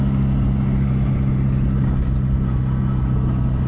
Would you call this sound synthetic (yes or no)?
no